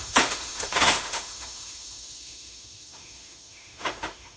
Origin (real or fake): fake